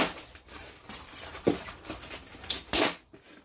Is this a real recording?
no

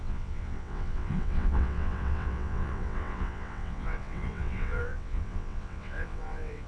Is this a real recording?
no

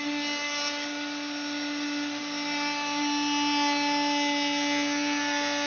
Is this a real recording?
yes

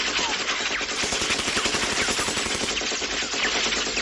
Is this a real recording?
yes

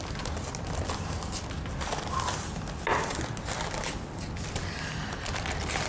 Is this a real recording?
yes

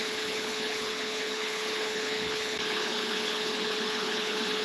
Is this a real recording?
no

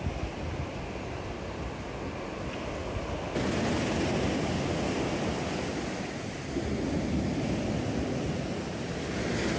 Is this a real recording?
yes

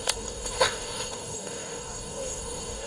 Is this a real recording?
no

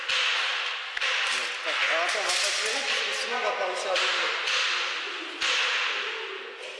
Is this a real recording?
yes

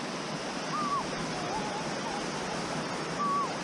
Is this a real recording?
yes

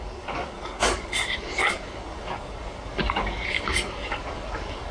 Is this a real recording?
no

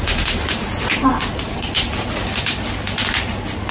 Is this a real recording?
yes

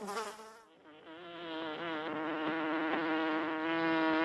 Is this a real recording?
yes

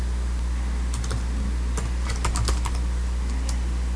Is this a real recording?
yes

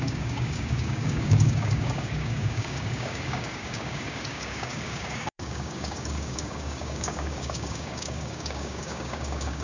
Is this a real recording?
no